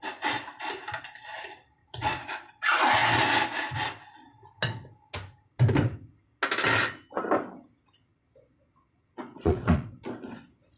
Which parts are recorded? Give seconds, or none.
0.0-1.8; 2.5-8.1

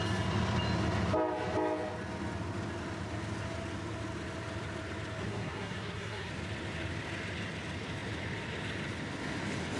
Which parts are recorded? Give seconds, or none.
0.0-5.2; 6.3-9.8

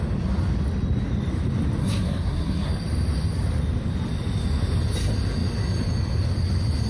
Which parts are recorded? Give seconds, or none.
0.0-1.8; 2.7-6.9

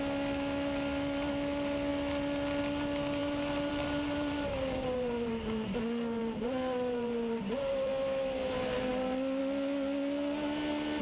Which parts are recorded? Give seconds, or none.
0.0-3.2; 7.9-11.0

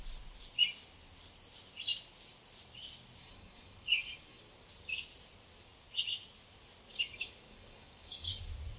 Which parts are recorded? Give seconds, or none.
0.0-3.2; 4.4-6.9; 8.4-8.8

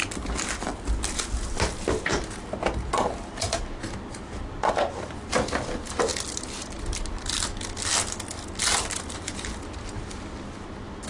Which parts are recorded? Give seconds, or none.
0.0-11.1